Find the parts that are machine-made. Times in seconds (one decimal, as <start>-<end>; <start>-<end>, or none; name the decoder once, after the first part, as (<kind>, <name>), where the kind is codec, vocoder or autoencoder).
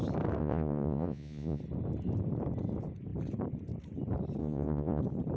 0.4-1.6 (vocoder, Vocos); 4.4-5.0